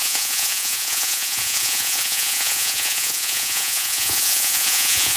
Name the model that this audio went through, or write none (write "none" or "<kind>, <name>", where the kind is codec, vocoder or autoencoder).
vocoder, Vocos